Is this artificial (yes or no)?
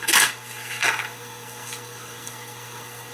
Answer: yes